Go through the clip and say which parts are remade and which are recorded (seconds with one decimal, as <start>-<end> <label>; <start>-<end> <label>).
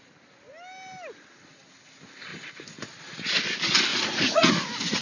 0.0-3.9 recorded; 3.9-4.5 remade; 4.5-5.0 recorded